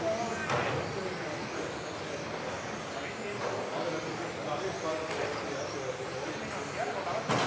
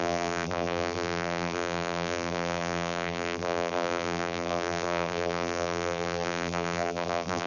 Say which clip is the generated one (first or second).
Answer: second